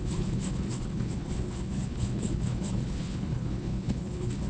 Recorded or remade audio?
remade